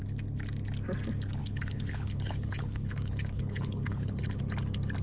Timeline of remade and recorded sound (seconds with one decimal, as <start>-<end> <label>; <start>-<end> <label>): 0.0-1.4 recorded; 1.4-4.4 remade; 4.4-5.0 recorded